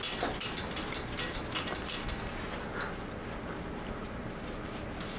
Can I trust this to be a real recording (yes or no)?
yes